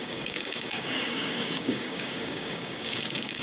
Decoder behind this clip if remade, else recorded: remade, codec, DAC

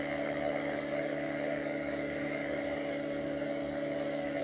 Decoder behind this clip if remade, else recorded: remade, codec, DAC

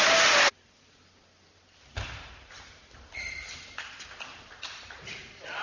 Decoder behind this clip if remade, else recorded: recorded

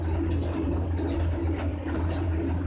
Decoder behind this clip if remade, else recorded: recorded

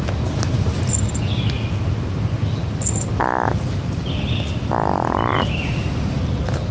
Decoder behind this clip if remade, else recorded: recorded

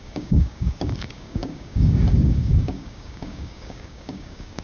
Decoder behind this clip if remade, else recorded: remade, codec, DAC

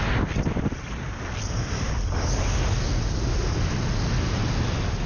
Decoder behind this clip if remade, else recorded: recorded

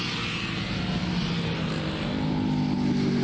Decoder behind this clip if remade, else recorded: recorded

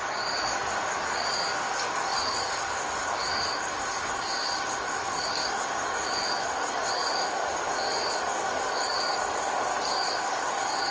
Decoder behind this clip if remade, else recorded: remade, codec, DAC